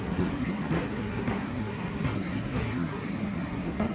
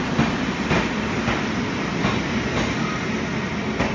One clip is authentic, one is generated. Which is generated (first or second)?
first